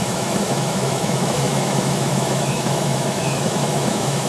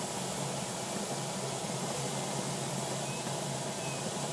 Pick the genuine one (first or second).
second